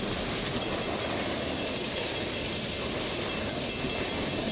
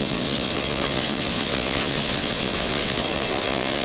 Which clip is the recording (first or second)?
first